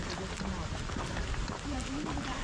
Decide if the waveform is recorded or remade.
recorded